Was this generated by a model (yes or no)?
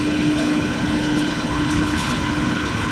yes